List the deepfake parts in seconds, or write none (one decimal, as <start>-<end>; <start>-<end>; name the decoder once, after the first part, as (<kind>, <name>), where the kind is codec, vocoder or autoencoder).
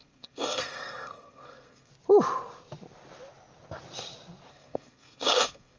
0.0-1.9 (codec, SNAC); 4.5-5.8